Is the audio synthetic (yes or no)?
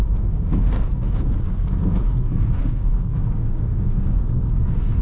yes